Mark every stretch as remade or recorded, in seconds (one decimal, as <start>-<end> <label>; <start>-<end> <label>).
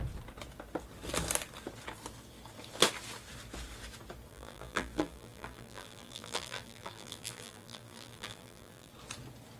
0.0-4.3 recorded; 4.3-8.9 remade; 8.9-9.6 recorded